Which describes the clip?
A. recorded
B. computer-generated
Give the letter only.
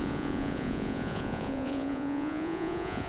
B